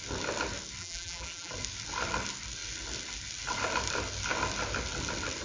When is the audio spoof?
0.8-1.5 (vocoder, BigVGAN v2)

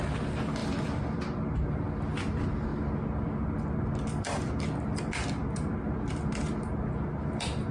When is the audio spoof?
0.6-1.5 (vocoder, BigVGAN v2)

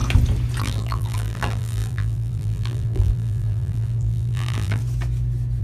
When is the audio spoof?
0.6-4.8 (vocoder, BigVGAN v2)

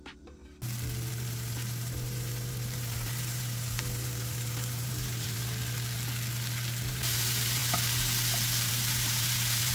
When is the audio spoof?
0.0-0.4 (vocoder, BigVGAN v2); 1.1-5.4; 6.9-7.6; 8.7-9.7